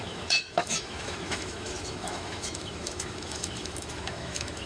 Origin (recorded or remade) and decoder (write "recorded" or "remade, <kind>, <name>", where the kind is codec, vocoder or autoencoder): remade, autoencoder, DAC-VAE